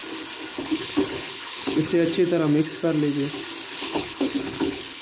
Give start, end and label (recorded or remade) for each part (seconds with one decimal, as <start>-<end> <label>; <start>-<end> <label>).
0.0-0.6 recorded; 0.6-1.9 remade; 1.9-3.8 recorded; 3.8-5.0 remade